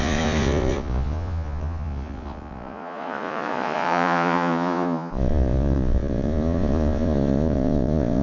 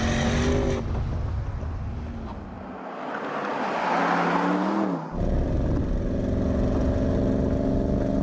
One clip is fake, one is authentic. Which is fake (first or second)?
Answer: first